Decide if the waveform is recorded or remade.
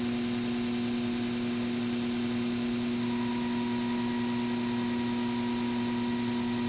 recorded